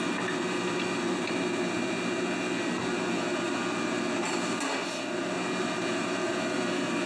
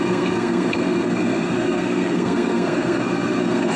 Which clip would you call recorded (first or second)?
first